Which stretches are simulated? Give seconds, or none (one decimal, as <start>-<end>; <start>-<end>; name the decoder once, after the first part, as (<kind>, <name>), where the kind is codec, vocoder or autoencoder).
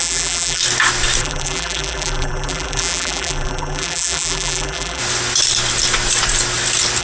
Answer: 0.0-0.6 (vocoder, BigVGAN v2); 1.2-5.0